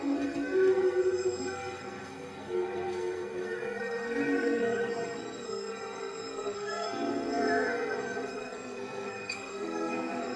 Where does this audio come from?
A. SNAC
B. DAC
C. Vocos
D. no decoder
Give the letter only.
A